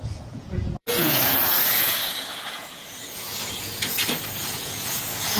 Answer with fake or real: fake